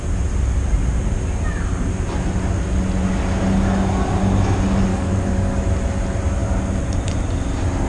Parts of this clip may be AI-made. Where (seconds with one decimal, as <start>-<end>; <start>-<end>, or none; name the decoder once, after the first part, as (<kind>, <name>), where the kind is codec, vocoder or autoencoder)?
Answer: 4.9-5.6 (codec, DAC)